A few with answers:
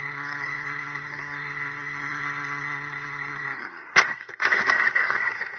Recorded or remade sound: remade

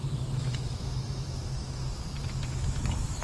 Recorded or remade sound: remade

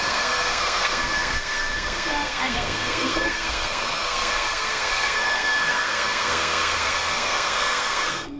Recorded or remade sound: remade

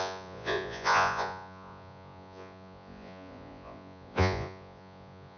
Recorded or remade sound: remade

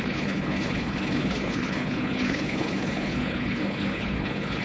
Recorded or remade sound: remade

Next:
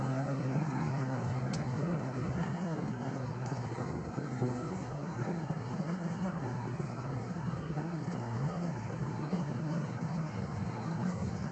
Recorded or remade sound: remade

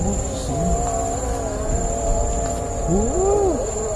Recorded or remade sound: recorded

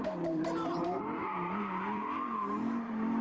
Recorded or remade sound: remade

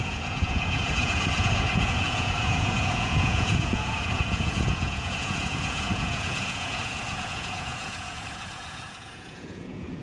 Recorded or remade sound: remade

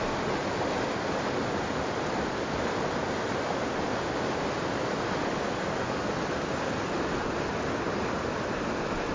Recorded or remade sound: recorded